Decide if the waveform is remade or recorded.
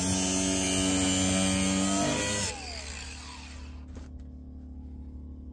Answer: recorded